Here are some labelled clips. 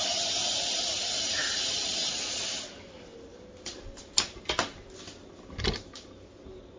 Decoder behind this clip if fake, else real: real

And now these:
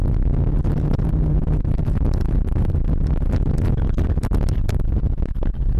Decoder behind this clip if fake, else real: real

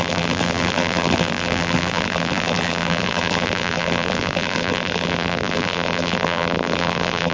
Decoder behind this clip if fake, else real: fake, vocoder, BigVGAN v2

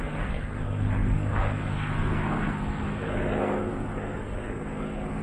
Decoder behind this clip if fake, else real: fake, codec, SNAC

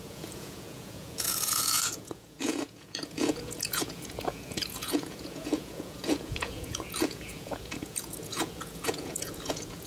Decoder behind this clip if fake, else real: fake, vocoder, Vocos